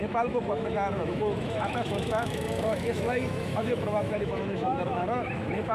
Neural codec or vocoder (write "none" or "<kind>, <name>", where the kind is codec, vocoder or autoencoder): autoencoder, DAC-VAE